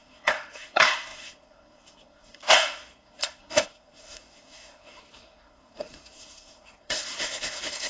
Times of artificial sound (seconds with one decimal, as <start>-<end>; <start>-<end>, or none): 0.0-7.9